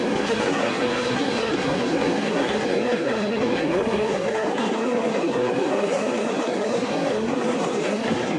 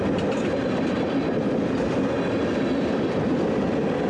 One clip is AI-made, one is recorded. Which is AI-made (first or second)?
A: first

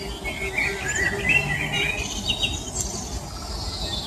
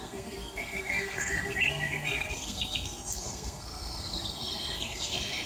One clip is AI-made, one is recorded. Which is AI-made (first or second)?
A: second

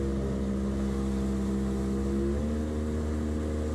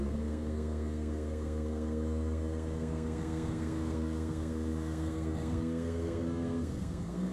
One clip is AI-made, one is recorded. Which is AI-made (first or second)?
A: second